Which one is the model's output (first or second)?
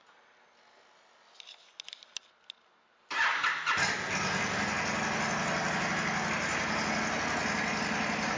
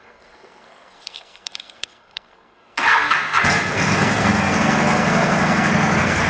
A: second